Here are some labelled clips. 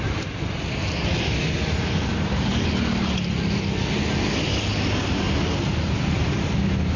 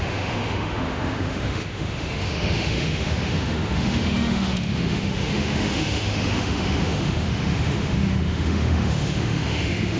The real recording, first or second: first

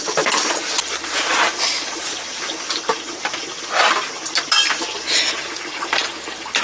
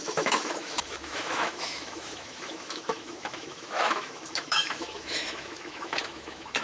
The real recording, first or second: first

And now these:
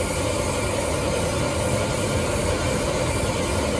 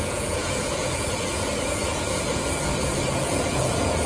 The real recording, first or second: first